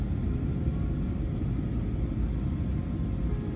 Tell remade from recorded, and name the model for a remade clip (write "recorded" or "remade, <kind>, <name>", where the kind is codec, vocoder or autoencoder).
recorded